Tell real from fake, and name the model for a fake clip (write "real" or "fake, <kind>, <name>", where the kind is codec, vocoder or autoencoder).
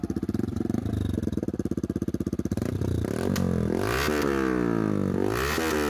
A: real